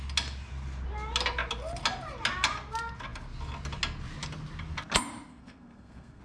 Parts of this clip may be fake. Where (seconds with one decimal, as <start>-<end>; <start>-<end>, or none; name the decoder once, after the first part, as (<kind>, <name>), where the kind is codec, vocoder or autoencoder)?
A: 5.3-6.2 (codec, SNAC)